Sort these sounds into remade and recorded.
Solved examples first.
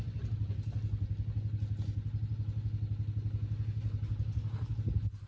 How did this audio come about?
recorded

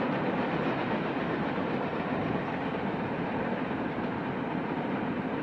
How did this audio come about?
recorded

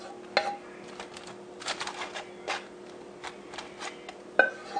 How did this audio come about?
recorded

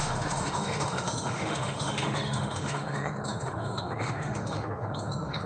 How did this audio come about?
remade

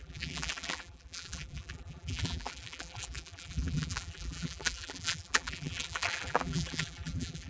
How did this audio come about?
remade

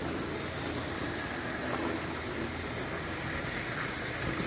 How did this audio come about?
recorded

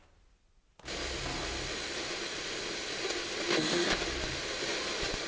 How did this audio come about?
recorded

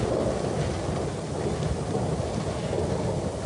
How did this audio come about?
recorded